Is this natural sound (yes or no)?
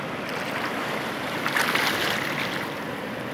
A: yes